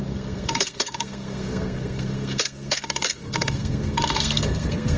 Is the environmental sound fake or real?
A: fake